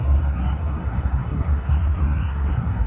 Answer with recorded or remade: remade